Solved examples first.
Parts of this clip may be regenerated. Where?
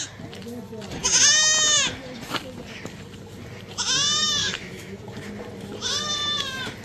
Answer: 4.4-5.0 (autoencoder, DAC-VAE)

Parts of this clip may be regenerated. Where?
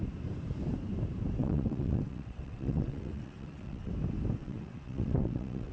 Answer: 1.4-3.9 (vocoder, WaveNeXt); 4.4-5.7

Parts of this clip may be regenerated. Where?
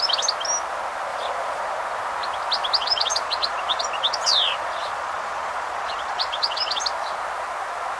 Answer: 1.1-1.6 (vocoder, Vocos); 2.8-6.8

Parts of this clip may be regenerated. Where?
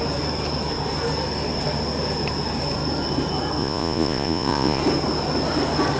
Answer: 3.6-4.8 (vocoder, Vocos)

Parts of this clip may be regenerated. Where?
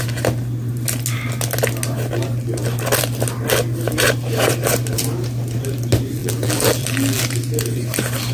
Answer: 6.2-7.2 (vocoder, BigVGAN v2)